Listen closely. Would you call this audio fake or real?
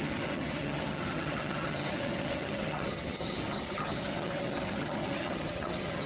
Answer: fake